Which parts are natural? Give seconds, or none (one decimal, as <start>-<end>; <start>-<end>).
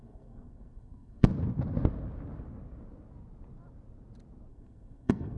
1.3-4.5